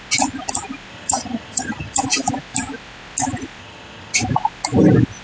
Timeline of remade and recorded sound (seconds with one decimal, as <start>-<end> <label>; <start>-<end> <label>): 0.0-0.9 recorded; 0.9-2.0 remade; 2.0-3.6 recorded; 3.6-4.2 remade; 4.2-5.2 recorded